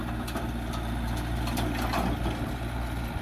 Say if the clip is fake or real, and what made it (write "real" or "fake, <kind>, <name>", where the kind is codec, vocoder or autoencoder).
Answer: real